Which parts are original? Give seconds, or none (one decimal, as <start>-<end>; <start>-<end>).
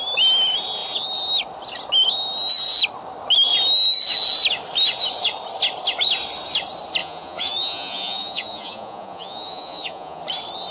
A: 0.0-7.0; 10.2-10.7